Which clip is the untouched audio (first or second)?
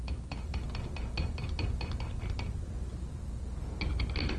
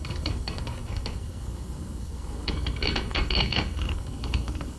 first